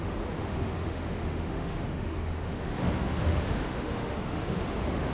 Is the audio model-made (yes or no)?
yes